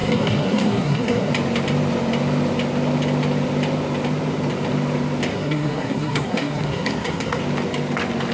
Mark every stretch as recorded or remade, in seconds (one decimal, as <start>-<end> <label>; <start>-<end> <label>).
0.0-1.3 remade; 1.3-5.3 recorded; 5.3-7.4 remade; 7.4-8.3 recorded